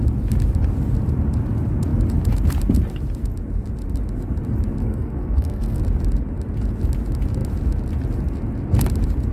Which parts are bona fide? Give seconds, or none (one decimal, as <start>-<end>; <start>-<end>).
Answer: 0.0-4.8; 5.8-9.3

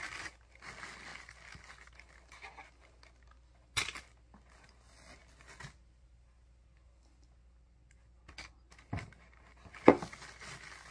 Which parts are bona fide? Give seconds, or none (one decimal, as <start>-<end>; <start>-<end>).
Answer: 0.0-10.9

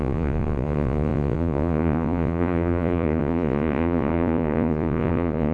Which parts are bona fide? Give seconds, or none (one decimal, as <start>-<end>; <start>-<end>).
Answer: none

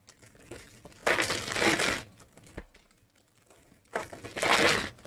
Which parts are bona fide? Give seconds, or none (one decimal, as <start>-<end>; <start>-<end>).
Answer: 0.0-5.1

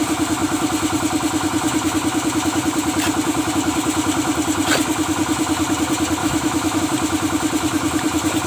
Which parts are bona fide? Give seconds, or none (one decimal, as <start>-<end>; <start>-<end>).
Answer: 0.0-6.2; 6.8-8.5

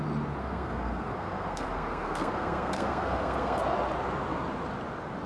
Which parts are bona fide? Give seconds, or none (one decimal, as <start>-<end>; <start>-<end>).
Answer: 0.0-0.4; 3.6-5.3

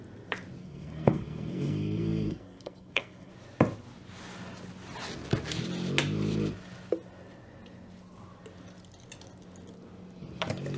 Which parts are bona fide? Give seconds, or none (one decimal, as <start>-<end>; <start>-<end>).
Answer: 0.0-0.6; 3.3-10.8

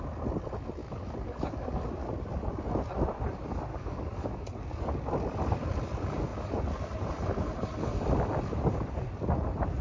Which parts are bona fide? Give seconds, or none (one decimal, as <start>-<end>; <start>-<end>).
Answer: 0.0-0.8; 1.8-3.7; 4.9-9.8